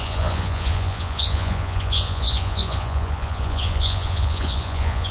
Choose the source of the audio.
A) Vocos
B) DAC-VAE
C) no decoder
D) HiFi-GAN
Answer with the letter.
A